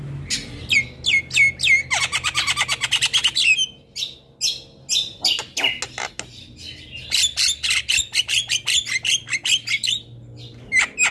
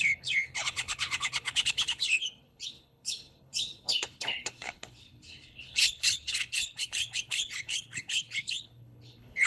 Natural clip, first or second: first